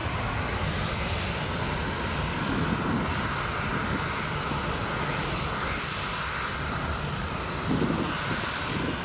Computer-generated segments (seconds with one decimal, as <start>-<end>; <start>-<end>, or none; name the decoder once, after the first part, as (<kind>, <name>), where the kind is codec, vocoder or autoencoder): none

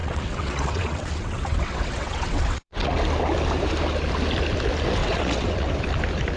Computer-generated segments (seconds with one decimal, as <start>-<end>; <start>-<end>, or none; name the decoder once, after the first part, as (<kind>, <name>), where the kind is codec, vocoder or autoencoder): 0.0-3.0 (vocoder, WaveNeXt); 5.0-5.7

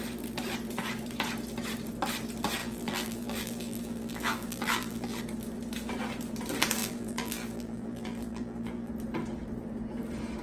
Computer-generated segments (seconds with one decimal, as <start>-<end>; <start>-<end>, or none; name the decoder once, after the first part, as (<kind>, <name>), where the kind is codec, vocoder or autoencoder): 2.6-5.2 (vocoder, BigVGAN v2); 6.8-8.9

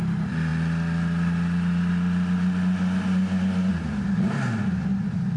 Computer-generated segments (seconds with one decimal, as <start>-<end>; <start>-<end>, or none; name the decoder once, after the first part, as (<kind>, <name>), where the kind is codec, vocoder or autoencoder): none

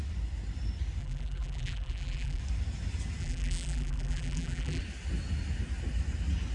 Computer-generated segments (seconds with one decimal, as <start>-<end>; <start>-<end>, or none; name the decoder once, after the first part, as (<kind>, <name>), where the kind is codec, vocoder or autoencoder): 1.0-2.4 (vocoder, BigVGAN v2); 3.2-4.8

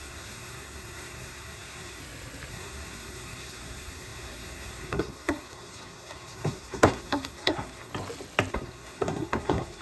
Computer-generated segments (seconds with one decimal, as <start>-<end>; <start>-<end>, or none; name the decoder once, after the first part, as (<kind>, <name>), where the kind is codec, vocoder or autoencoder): 0.0-2.0 (codec, SNAC); 2.5-7.9; 8.5-9.8

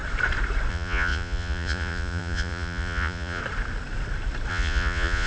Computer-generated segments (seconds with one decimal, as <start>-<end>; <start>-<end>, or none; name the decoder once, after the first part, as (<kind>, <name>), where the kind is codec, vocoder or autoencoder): 0.7-3.4 (vocoder, Vocos); 4.5-5.3

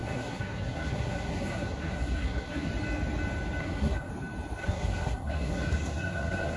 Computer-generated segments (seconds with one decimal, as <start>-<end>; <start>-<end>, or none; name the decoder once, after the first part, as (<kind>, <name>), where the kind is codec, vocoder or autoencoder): 0.0-2.7 (codec, SNAC); 3.6-4.1; 4.6-6.6